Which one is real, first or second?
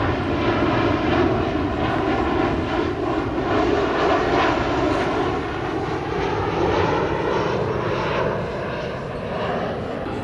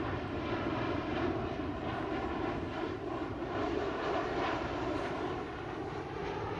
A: first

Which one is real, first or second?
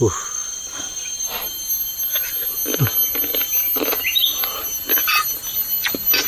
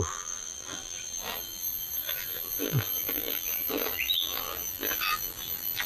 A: first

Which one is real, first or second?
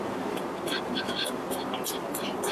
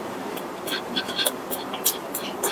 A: first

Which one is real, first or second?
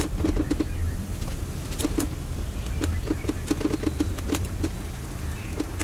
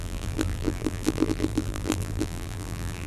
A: first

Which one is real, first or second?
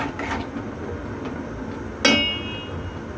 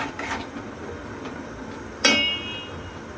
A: first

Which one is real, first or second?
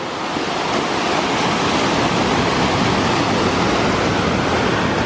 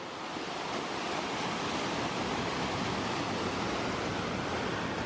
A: first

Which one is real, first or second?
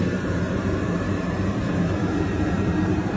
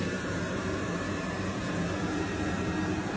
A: second